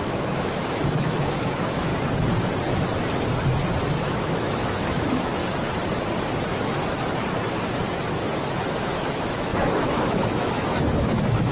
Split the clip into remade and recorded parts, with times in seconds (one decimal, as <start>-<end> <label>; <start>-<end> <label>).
0.0-1.9 remade; 1.9-4.0 recorded; 4.0-5.4 remade; 5.4-8.7 recorded; 8.7-11.5 remade